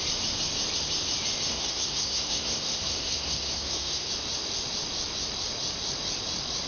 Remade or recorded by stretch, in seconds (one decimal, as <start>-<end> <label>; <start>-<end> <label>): 0.0-1.5 recorded; 1.5-4.1 remade; 4.1-6.7 recorded

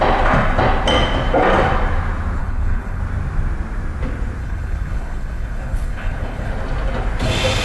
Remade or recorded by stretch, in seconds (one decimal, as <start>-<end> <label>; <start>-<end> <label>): 0.0-2.4 recorded; 2.4-3.0 remade; 3.0-4.4 recorded; 4.4-6.5 remade; 6.5-7.6 recorded

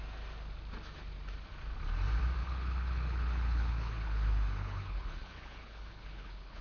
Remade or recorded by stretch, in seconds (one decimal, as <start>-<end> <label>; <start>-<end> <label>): 0.0-2.4 recorded; 2.4-6.6 remade

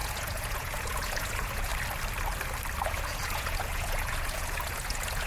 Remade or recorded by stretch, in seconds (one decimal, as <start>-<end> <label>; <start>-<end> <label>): 0.0-1.7 remade; 1.7-2.8 recorded; 2.8-5.3 remade

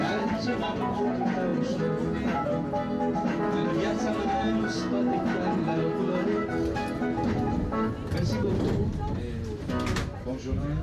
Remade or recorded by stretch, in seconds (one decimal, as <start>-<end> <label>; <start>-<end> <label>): 0.0-10.8 recorded

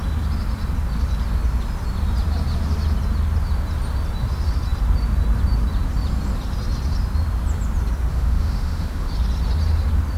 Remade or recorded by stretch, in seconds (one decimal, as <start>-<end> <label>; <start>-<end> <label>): 0.0-8.1 recorded; 8.1-9.1 remade; 9.1-10.2 recorded

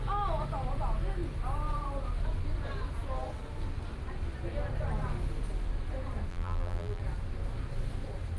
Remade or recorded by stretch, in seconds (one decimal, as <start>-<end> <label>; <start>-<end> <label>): 0.0-6.3 recorded; 6.3-7.0 remade; 7.0-8.4 recorded

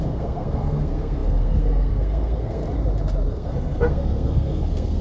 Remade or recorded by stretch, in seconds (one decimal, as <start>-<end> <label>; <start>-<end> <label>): 0.0-2.6 remade; 2.6-3.3 recorded; 3.3-5.0 remade